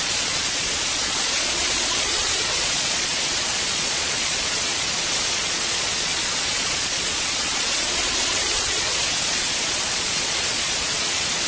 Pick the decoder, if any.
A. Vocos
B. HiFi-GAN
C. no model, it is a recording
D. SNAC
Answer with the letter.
A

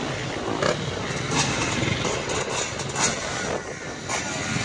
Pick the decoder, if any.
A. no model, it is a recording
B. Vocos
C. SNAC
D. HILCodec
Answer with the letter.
A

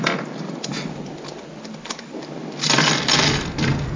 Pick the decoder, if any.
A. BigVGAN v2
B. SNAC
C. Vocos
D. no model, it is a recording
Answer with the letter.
D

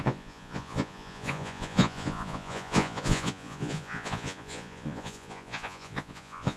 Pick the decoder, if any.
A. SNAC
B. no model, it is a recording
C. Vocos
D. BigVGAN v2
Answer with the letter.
C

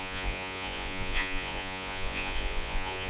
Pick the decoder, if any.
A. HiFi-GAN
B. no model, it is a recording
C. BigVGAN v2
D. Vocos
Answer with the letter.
D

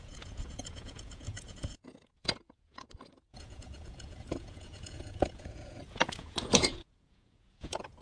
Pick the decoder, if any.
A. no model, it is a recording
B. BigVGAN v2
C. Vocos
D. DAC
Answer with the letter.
C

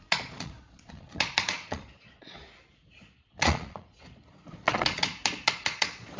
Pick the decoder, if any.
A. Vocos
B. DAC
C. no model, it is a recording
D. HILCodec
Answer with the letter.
A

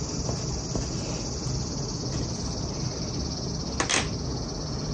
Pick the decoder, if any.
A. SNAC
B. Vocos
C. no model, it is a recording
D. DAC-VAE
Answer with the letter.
C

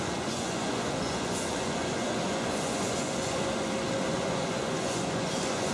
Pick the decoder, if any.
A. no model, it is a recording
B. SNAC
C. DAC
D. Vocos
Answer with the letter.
D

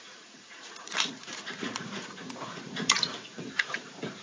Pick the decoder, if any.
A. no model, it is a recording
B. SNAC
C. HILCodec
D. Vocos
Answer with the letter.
D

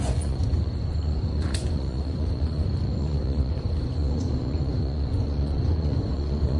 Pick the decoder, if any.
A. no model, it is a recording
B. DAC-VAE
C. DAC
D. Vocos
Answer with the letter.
D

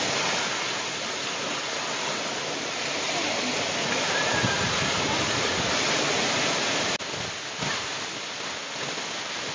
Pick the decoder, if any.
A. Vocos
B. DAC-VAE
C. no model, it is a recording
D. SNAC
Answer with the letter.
C